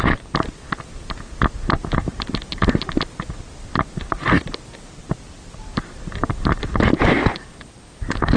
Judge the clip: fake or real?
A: real